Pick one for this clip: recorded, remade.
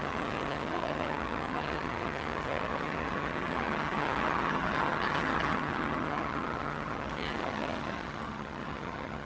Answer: remade